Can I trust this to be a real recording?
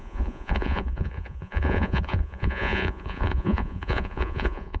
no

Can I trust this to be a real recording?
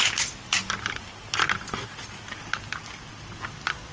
yes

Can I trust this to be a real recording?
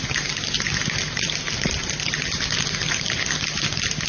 yes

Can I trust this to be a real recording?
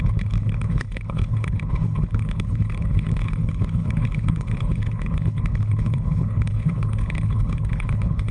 no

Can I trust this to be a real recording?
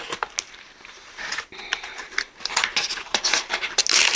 yes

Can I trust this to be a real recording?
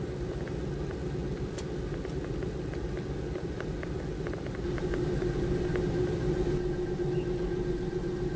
yes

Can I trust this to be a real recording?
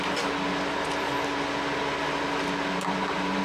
yes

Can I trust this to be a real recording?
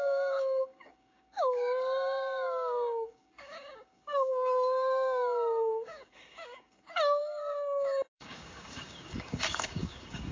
no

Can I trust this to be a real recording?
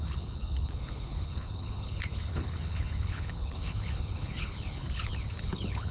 no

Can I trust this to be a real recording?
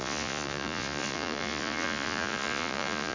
no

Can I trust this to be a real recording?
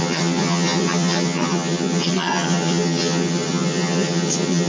no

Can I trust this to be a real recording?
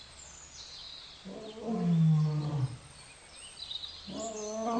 yes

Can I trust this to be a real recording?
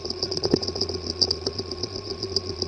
no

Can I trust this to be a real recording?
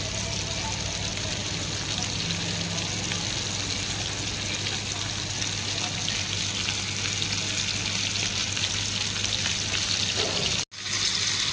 yes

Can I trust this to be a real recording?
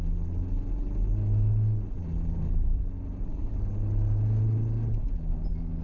yes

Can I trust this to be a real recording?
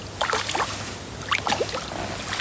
yes